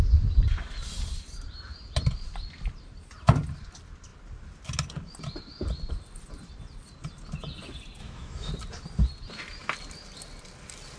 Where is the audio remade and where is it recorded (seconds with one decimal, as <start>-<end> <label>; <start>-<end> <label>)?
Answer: 0.0-8.0 recorded; 8.0-8.5 remade; 8.5-11.0 recorded